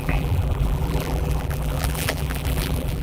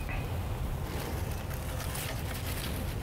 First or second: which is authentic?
second